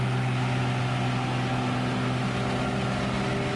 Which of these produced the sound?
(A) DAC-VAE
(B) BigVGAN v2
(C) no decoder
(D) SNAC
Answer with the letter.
C